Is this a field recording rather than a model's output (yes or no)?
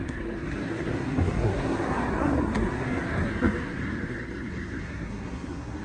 no